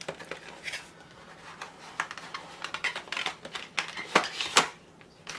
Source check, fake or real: real